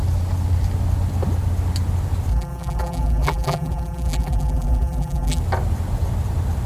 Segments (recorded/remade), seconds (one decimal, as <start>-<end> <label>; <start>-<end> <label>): 0.0-2.3 recorded; 2.3-5.4 remade; 5.4-6.7 recorded